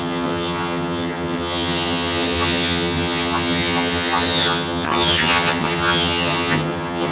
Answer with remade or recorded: remade